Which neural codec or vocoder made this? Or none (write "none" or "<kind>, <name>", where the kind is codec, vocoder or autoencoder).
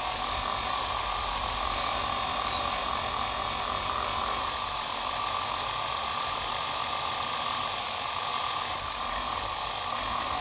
none